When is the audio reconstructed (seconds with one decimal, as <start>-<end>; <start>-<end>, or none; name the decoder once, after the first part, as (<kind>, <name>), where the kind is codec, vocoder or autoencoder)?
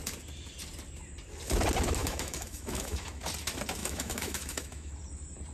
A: 2.0-3.2 (autoencoder, DAC-VAE); 3.8-4.9